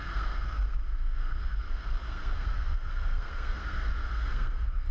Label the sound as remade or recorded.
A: remade